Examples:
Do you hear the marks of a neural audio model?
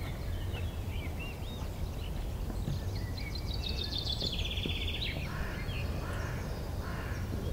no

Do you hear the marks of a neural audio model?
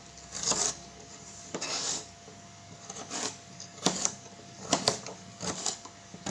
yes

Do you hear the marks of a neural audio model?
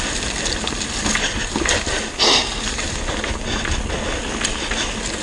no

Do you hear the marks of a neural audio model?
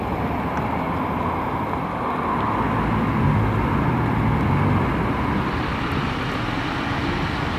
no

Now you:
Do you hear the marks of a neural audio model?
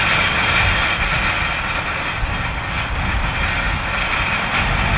no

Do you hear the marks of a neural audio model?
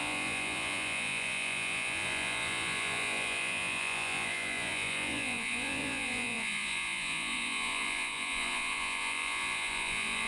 yes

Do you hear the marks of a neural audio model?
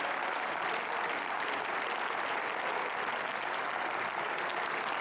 no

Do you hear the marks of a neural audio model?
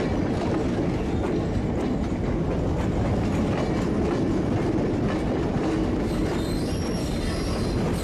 no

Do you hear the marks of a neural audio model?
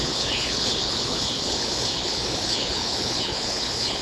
yes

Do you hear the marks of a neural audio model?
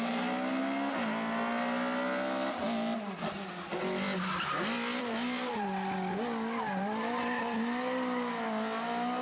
no